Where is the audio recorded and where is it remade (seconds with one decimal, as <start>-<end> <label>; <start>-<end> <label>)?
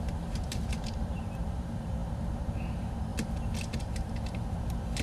0.0-3.1 remade; 3.1-3.8 recorded; 3.8-5.0 remade